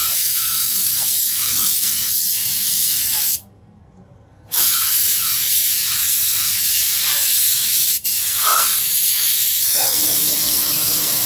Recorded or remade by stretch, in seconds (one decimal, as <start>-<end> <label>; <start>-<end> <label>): 0.0-11.3 remade